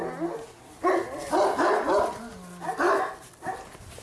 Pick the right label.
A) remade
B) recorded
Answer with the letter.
B